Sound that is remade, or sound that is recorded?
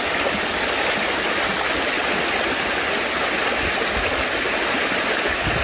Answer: recorded